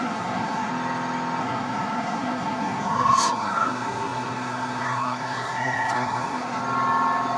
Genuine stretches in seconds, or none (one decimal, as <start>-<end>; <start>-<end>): 0.7-1.4; 6.6-7.4